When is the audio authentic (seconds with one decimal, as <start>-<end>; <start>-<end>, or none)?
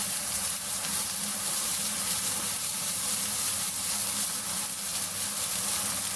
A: 3.7-6.2